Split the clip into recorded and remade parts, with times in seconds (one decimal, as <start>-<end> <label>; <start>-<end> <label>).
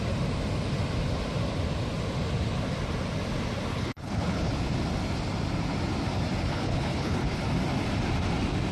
0.0-3.7 recorded; 3.7-4.5 remade; 4.5-6.5 recorded; 6.5-7.4 remade; 7.4-8.7 recorded